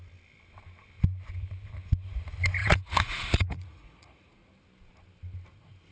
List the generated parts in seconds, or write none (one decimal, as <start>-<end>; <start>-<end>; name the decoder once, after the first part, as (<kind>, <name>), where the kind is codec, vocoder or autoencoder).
2.6-4.5 (vocoder, Vocos)